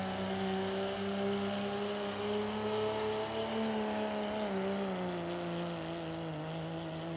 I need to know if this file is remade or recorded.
recorded